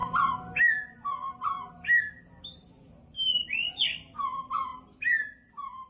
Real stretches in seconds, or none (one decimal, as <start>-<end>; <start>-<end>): 0.0-5.9

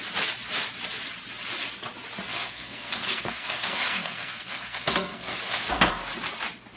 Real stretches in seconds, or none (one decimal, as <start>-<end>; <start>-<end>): 0.0-2.3; 5.9-6.8

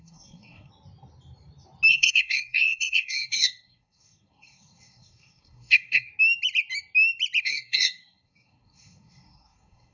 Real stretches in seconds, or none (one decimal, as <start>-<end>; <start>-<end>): 0.7-1.9; 6.1-7.4

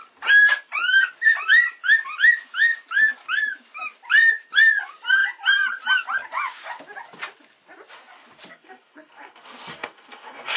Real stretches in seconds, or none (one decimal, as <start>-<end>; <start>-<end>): 0.0-8.5

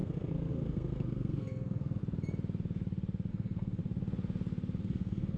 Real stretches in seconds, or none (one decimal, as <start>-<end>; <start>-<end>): 2.0-3.3; 3.8-4.8

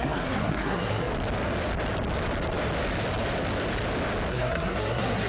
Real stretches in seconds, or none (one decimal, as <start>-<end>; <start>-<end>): 1.1-4.3

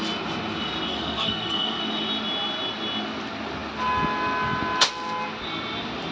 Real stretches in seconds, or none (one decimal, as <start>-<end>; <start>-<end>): 0.0-0.9; 1.8-6.1

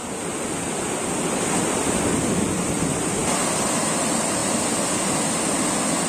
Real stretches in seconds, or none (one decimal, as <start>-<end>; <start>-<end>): 0.0-6.1